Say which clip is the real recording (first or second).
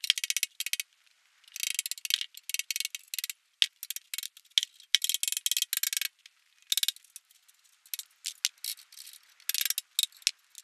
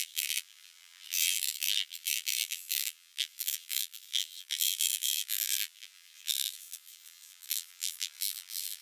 first